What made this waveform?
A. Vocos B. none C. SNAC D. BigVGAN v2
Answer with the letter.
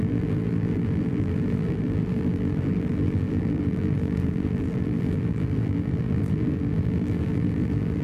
D